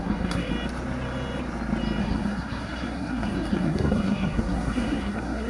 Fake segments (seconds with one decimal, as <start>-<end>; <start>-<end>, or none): 0.0-0.5; 2.0-5.5